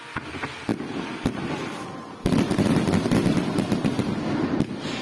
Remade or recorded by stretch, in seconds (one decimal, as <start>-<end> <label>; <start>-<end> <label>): 0.0-5.0 recorded